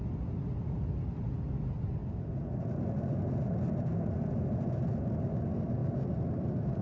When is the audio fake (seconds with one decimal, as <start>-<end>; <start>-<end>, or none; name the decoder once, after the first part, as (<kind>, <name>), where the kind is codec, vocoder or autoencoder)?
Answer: none